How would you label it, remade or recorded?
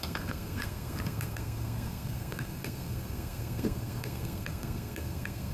remade